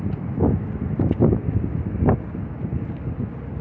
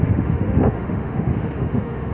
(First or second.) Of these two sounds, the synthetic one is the second